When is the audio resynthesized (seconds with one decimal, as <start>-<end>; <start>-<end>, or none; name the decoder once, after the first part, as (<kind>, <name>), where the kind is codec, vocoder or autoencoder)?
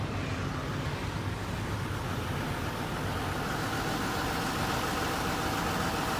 none